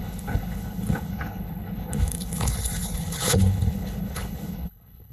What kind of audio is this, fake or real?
fake